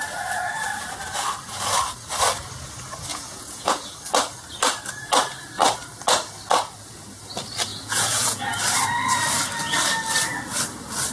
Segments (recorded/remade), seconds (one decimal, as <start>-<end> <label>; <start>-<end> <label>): 0.0-3.1 recorded; 3.1-3.7 remade; 3.7-7.7 recorded; 7.7-8.4 remade; 8.4-11.1 recorded